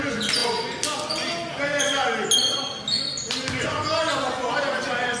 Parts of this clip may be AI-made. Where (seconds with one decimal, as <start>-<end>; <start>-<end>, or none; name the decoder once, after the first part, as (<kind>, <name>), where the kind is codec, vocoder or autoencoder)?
none